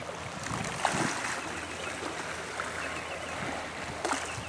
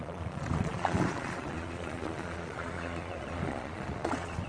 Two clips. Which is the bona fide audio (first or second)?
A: first